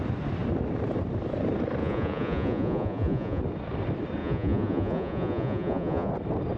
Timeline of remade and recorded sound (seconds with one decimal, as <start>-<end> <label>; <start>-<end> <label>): 0.0-1.8 recorded; 1.8-3.4 remade; 3.4-4.2 recorded; 4.2-6.1 remade; 6.1-6.6 recorded